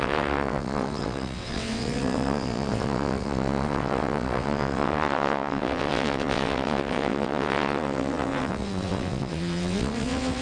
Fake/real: fake